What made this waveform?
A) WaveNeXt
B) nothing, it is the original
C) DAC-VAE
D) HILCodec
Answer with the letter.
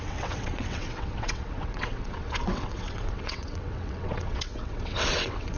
A